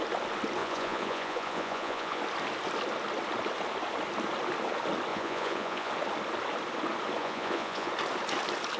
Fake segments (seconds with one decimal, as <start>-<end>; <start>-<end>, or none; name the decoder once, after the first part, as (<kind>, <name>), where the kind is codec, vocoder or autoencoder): 0.6-2.2 (vocoder, Vocos); 5.1-5.9; 7.2-7.9